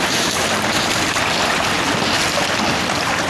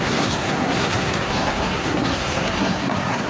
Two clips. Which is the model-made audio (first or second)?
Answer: second